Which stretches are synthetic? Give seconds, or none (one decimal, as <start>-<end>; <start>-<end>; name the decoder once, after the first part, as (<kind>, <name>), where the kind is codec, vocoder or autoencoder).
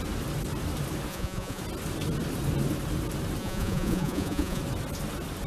1.1-1.6 (vocoder, Vocos); 3.4-4.6